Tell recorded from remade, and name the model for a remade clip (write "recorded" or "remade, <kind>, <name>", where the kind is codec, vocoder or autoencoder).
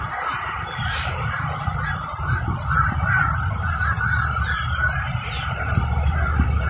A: remade, vocoder, BigVGAN v2